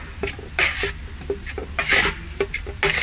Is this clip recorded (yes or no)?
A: yes